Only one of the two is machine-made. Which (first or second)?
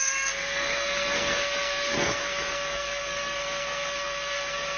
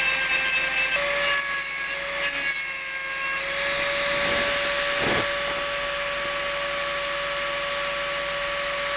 first